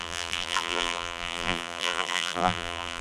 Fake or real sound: fake